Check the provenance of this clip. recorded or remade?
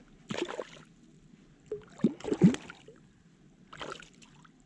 recorded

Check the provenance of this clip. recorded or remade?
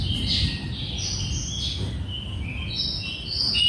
recorded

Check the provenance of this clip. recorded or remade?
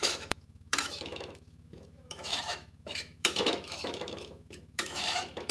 remade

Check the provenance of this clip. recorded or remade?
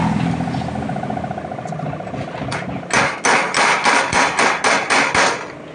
recorded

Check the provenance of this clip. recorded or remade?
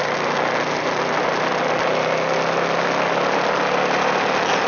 recorded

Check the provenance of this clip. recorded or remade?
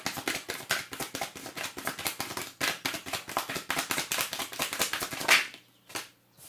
recorded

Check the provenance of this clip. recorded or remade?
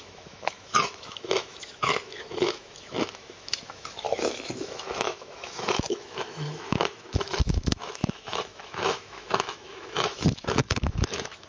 remade